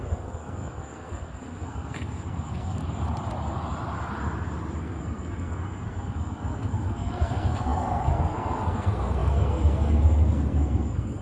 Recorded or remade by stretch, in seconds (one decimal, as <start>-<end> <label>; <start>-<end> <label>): 0.0-2.8 remade; 2.8-4.8 recorded; 4.8-11.2 remade